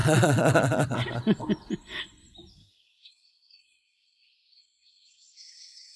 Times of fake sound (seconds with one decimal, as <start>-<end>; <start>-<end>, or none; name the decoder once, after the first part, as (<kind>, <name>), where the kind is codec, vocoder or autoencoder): 2.5-6.0 (codec, SNAC)